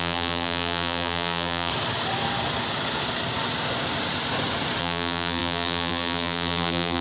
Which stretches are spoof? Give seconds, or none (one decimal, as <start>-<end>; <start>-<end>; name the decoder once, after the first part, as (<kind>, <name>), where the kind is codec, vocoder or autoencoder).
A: 0.0-1.7 (vocoder, BigVGAN v2); 4.8-7.0